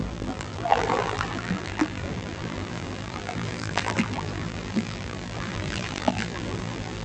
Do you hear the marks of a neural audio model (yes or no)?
yes